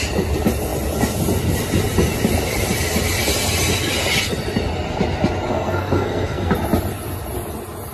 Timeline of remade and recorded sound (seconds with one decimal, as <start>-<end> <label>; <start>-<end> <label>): 0.0-5.5 recorded; 5.5-6.5 remade; 6.5-7.9 recorded

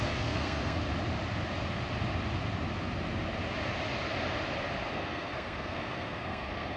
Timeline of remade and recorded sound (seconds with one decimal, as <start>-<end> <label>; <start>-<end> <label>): 0.0-0.8 remade; 0.8-4.9 recorded; 4.9-6.8 remade

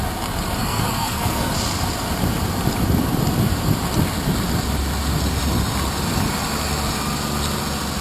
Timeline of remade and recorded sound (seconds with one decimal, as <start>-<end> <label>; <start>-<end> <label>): 0.0-0.6 recorded; 0.6-1.5 remade; 1.5-8.0 recorded

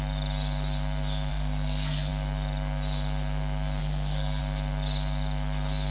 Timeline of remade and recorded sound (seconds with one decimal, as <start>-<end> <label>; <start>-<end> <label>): 0.0-1.3 recorded; 1.3-2.1 remade; 2.1-3.8 recorded; 3.8-4.4 remade; 4.4-5.9 recorded

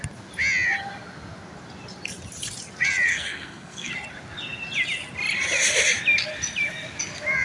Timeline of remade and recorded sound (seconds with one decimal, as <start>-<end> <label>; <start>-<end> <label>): 0.0-3.1 recorded; 3.1-3.9 remade; 3.9-7.4 recorded

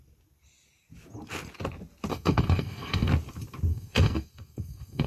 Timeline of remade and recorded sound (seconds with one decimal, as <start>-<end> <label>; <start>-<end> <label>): 0.0-2.1 recorded; 2.1-3.1 remade; 3.1-3.7 recorded; 3.7-5.1 remade

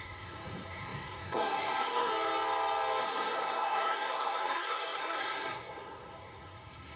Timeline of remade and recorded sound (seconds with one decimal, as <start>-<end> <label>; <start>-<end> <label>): 0.0-2.1 remade; 2.1-3.0 recorded; 3.0-7.0 remade

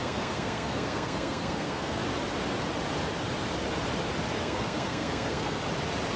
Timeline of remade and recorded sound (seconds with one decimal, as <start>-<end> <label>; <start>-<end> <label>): 0.0-2.0 remade; 2.0-4.4 recorded; 4.4-5.6 remade; 5.6-6.2 recorded